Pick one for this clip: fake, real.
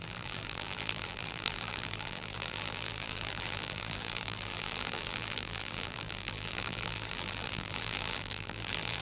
fake